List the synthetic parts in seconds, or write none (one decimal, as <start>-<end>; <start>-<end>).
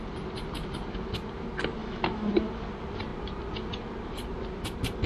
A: 1.8-2.3